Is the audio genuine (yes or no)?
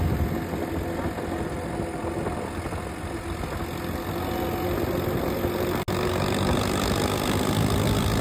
yes